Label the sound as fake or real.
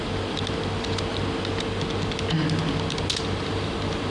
real